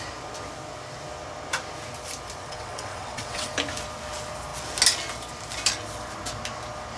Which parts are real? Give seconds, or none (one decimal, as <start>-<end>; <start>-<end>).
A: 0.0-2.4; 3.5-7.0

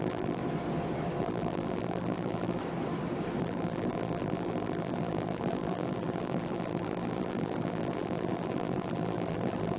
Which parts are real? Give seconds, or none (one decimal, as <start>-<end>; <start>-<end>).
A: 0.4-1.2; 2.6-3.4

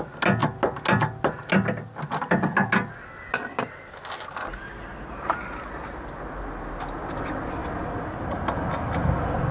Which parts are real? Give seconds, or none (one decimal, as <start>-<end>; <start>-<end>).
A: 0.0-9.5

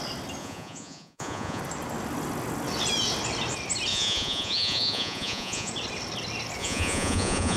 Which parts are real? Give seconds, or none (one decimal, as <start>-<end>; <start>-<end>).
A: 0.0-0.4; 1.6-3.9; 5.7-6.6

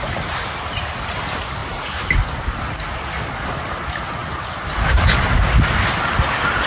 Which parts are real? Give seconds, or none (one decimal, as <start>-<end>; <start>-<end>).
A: 0.0-6.7